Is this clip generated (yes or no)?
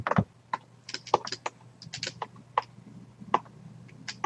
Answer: no